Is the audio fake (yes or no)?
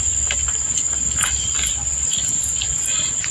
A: no